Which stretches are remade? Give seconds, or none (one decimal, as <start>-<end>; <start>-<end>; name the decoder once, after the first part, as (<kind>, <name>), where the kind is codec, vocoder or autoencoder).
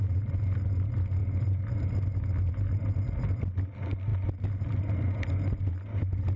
none